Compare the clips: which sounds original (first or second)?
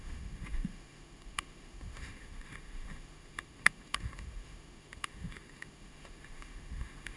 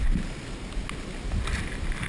second